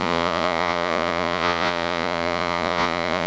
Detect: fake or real fake